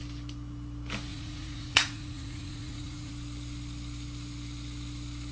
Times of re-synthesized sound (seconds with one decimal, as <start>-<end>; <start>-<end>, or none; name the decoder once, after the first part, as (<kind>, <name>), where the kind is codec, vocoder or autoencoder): 1.1-3.1 (vocoder, Vocos)